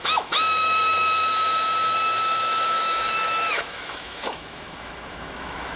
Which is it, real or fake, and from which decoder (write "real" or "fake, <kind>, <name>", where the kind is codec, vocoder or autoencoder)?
fake, autoencoder, DAC-VAE